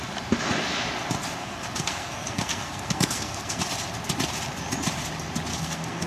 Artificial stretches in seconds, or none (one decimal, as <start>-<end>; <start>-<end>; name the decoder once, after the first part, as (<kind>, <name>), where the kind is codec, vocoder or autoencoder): 1.4-3.6 (codec, SNAC); 5.5-6.1